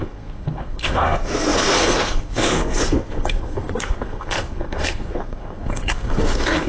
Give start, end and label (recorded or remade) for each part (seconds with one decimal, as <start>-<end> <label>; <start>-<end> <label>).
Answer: 0.0-6.7 remade